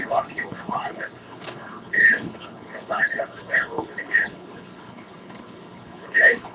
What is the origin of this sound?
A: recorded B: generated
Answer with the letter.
B